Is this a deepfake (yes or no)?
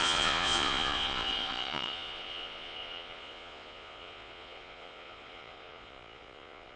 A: yes